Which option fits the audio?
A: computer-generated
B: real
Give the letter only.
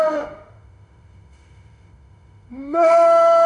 A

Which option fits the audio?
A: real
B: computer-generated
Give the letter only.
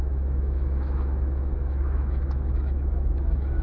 B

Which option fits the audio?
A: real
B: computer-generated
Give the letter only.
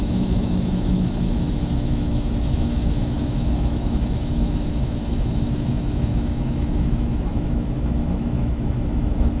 B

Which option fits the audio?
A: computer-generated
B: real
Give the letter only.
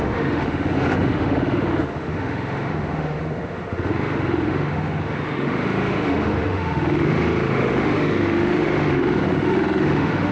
A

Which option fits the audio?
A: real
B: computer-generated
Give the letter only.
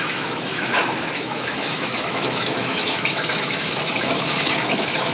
B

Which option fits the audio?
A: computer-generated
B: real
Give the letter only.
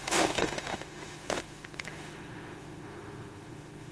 A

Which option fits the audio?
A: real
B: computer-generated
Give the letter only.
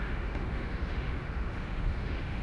B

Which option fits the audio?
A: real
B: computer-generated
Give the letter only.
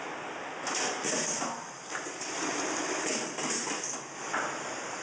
A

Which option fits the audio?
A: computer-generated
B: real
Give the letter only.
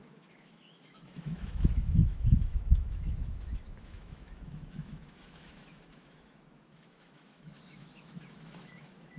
A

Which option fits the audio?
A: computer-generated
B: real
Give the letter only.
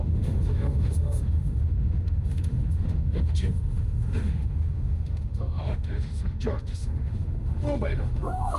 A